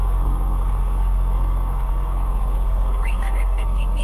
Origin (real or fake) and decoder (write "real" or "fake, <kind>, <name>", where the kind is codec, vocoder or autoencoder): fake, codec, SNAC